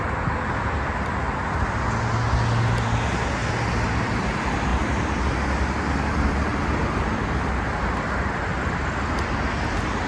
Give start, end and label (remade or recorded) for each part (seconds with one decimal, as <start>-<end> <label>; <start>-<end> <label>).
0.0-10.1 recorded